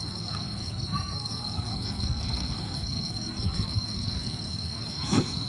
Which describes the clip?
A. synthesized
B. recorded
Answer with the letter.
A